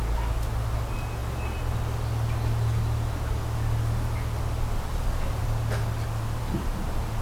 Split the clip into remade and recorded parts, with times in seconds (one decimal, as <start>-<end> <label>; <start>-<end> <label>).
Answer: 0.0-7.2 recorded